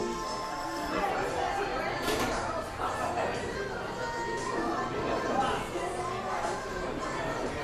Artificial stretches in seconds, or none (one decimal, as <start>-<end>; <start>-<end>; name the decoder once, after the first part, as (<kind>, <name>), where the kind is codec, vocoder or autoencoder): 0.0-1.1 (codec, SNAC)